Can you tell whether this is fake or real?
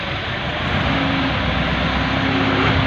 real